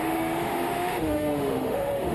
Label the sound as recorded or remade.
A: remade